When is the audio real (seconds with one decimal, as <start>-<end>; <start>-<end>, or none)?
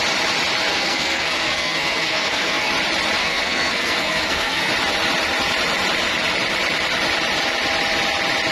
0.0-0.7; 2.7-3.2; 4.7-8.5